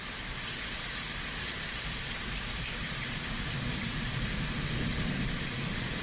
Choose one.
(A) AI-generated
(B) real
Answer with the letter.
A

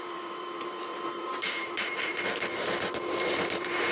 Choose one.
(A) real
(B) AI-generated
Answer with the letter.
B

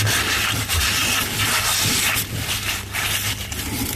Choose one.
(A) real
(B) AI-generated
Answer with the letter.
A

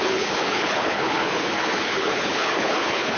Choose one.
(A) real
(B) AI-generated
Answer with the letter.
B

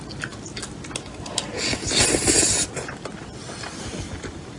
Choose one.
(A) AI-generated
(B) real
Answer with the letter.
B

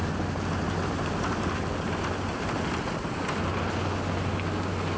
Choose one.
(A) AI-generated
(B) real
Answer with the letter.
B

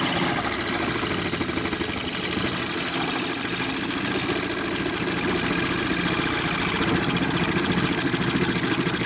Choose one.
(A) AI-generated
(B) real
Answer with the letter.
B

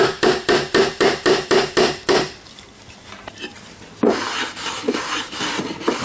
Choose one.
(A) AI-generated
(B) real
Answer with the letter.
A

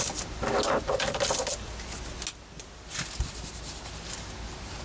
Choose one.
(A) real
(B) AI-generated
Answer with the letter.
A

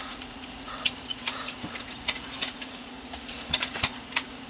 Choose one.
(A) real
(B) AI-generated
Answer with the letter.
B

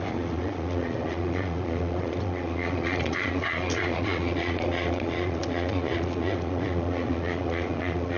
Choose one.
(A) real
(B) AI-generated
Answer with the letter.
B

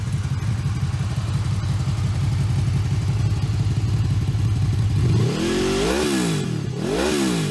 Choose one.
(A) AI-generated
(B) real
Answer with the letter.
B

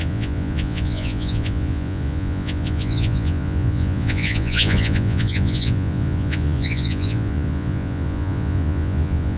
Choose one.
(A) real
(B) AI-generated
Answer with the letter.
B